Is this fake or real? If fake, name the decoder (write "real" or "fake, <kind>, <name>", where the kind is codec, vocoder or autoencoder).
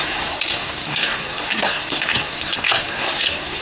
fake, codec, SNAC